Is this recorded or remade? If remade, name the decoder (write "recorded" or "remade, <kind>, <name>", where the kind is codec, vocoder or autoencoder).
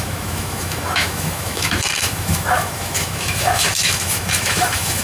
remade, autoencoder, DAC-VAE